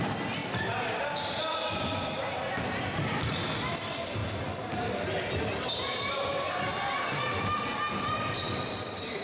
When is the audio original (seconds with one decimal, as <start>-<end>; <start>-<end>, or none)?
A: 0.4-1.4; 4.2-8.0